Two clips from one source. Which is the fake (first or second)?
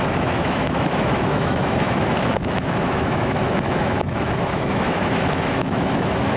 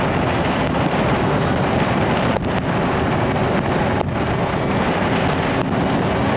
first